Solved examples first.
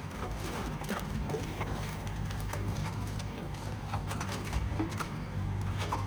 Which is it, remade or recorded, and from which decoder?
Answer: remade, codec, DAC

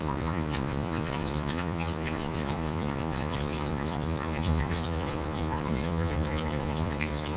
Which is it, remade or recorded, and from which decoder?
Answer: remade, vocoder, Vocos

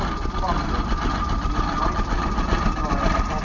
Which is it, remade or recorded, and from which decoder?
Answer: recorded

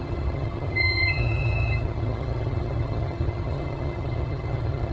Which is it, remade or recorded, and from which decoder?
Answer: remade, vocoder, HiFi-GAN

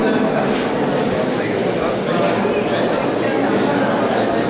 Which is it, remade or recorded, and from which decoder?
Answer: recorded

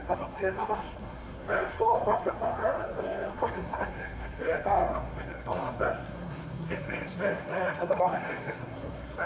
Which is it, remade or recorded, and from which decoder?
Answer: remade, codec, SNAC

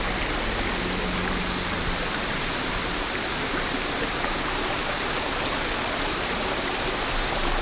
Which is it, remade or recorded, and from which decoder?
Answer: recorded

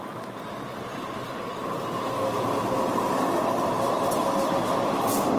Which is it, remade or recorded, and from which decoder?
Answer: recorded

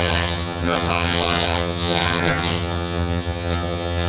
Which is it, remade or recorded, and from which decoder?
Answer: remade, vocoder, HiFi-GAN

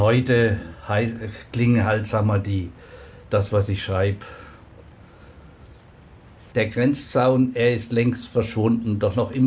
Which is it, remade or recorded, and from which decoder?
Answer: recorded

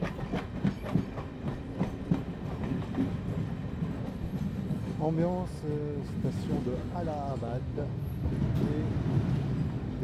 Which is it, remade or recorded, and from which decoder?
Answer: recorded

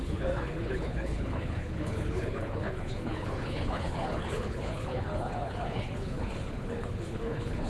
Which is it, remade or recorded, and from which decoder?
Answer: remade, codec, HILCodec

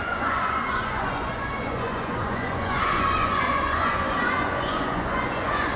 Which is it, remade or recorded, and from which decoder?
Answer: remade, vocoder, Vocos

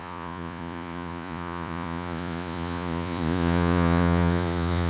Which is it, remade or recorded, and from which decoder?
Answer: remade, vocoder, Vocos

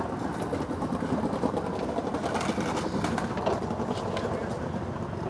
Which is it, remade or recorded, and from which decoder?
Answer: recorded